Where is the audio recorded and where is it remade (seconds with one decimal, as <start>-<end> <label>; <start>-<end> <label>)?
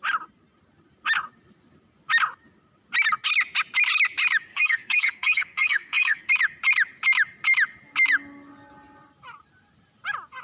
0.0-4.5 recorded; 4.5-6.3 remade; 6.3-10.4 recorded